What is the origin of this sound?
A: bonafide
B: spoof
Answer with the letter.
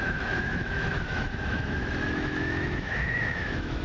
B